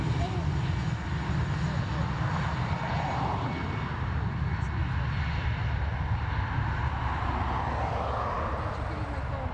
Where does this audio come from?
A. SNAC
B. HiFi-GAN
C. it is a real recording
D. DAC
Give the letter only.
C